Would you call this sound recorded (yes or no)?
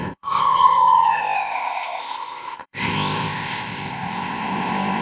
no